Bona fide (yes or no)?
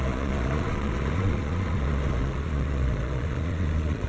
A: no